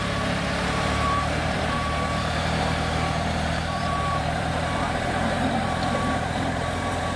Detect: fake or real fake